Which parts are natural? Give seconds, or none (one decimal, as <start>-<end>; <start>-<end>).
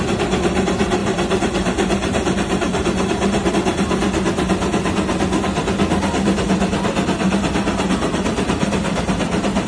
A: 0.0-1.0; 3.5-9.7